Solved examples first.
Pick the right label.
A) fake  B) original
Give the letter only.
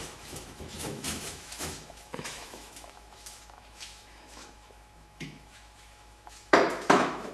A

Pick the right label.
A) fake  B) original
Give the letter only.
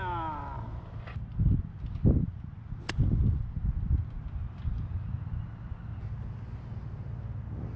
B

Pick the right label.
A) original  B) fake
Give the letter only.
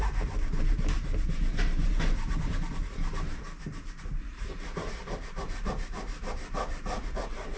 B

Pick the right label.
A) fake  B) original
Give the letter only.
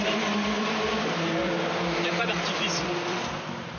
A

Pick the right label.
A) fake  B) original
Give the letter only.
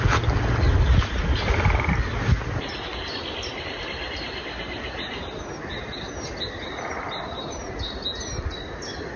B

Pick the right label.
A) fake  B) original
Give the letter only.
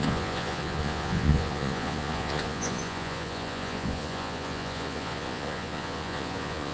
A